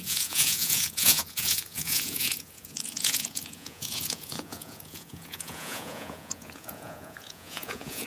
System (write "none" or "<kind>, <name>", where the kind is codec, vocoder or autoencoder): vocoder, Vocos